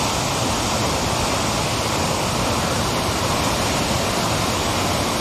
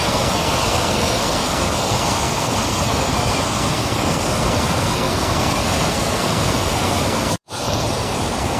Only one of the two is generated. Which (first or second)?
second